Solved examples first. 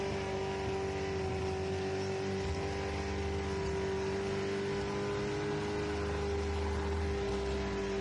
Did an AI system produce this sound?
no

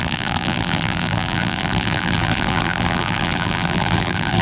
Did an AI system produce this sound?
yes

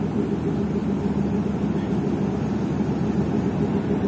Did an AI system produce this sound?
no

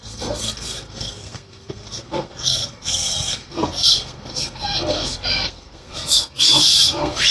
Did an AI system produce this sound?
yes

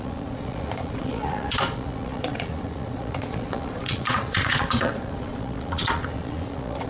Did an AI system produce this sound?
yes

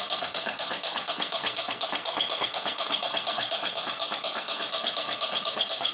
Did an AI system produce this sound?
yes